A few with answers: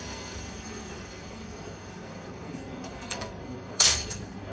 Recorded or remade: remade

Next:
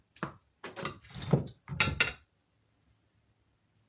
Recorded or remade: recorded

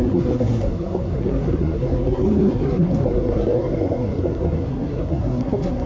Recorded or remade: remade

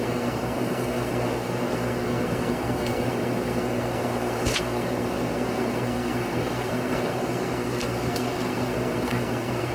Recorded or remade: remade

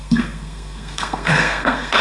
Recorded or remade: remade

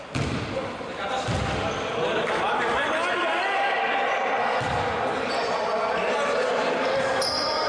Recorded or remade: recorded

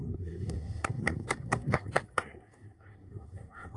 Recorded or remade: remade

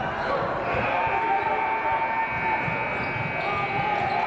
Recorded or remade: recorded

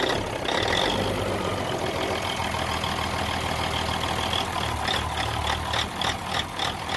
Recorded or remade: recorded